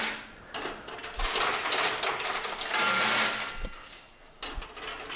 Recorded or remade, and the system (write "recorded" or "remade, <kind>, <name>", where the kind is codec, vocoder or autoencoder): recorded